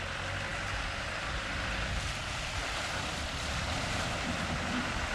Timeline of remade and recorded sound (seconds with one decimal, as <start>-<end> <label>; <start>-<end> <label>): 0.0-5.1 recorded